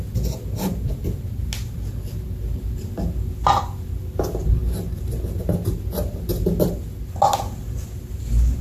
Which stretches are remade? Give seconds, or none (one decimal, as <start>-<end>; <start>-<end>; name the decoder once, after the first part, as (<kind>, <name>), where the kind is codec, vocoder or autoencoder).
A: none